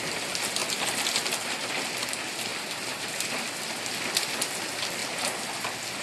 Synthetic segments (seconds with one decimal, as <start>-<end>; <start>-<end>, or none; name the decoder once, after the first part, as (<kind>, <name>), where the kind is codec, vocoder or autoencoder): 0.6-1.7 (vocoder, BigVGAN v2); 2.5-3.7